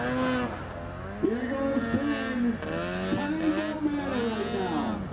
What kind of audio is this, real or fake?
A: real